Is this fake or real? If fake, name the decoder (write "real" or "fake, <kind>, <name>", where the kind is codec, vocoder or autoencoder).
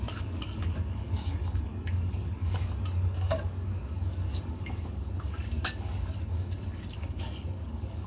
fake, codec, DAC